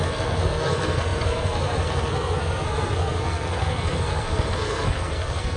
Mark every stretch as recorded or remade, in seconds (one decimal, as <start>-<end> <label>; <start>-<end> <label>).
0.0-5.6 remade